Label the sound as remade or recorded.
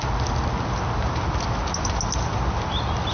recorded